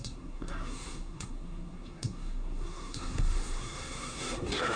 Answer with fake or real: fake